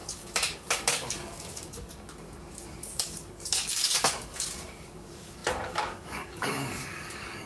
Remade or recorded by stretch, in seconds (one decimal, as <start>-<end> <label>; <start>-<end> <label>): 0.0-7.5 remade